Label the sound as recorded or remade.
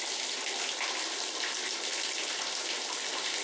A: recorded